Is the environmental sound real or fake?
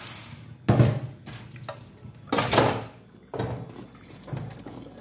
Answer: real